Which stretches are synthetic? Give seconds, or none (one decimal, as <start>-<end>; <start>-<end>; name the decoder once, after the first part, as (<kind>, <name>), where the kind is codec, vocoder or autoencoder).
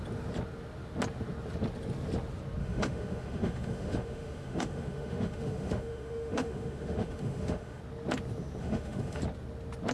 2.6-7.8 (autoencoder, DAC-VAE); 8.6-9.2